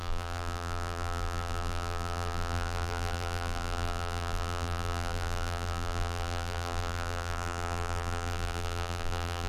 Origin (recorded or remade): remade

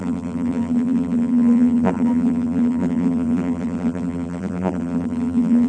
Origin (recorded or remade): remade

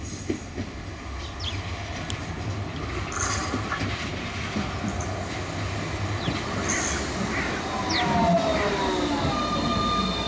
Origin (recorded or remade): recorded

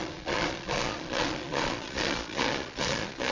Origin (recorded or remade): remade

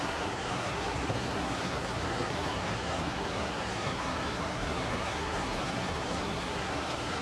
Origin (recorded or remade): remade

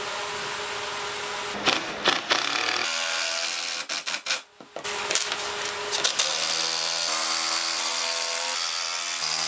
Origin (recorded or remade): recorded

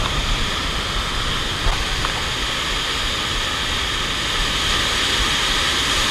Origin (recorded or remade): recorded